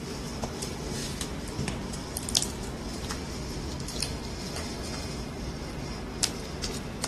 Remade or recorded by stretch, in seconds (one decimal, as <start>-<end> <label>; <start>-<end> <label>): 0.0-1.0 remade; 1.0-1.5 recorded; 1.5-2.0 remade; 2.0-6.3 recorded; 6.3-7.1 remade